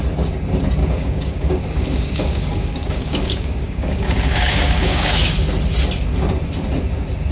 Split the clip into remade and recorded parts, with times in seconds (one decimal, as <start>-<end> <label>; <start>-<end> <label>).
0.0-0.8 recorded; 0.8-5.2 remade; 5.2-7.3 recorded